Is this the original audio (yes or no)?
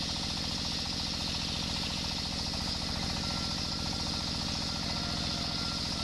yes